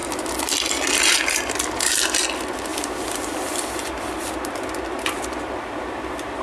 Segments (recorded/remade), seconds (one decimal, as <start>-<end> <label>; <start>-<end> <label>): 0.0-6.4 recorded